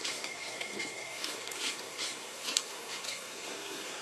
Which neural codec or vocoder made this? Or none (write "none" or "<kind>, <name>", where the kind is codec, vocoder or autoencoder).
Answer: codec, SNAC